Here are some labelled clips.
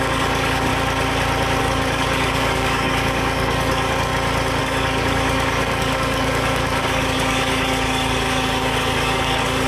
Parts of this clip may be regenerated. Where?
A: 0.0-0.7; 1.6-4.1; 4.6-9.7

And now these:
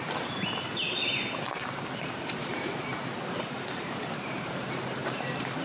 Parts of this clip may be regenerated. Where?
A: 0.0-0.8; 2.0-2.9; 3.4-5.6

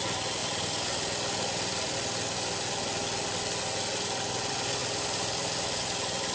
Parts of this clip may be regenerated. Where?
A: 0.4-2.8